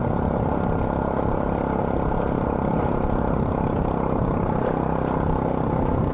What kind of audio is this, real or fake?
real